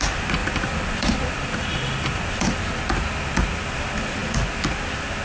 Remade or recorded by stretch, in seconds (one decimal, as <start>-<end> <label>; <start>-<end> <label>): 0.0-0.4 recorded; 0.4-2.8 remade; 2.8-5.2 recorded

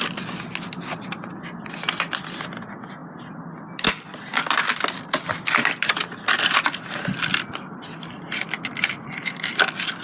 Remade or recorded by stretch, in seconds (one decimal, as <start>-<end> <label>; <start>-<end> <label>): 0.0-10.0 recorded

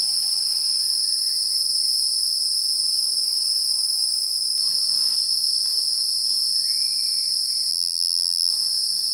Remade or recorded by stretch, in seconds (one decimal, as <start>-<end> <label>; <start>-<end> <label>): 0.0-7.7 recorded; 7.7-8.5 remade; 8.5-9.1 recorded

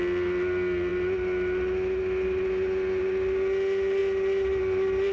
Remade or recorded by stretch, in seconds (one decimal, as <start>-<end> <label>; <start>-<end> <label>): 0.0-5.1 recorded

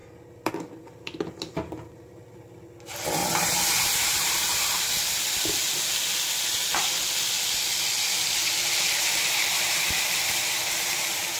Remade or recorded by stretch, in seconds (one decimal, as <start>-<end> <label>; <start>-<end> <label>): 0.0-3.2 recorded; 3.2-6.0 remade; 6.0-8.1 recorded; 8.1-11.4 remade